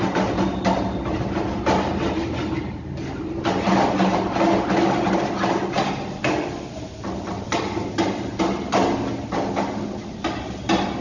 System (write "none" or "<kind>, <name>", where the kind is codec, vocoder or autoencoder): none